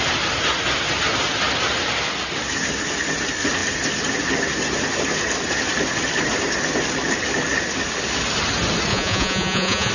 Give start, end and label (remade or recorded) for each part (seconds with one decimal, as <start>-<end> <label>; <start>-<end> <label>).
0.0-8.9 recorded; 8.9-9.9 remade